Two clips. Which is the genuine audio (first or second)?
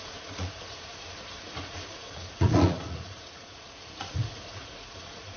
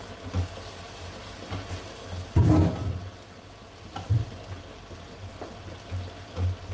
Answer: second